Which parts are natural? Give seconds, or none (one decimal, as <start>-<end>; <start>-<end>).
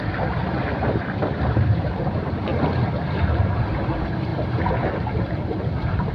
0.4-1.2; 2.5-3.6